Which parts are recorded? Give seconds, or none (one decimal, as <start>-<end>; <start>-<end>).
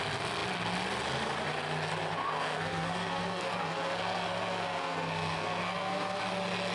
0.0-2.2; 6.2-6.7